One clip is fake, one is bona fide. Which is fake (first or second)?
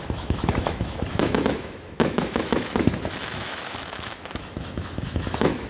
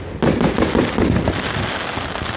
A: first